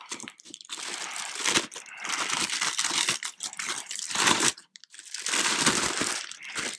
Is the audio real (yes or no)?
no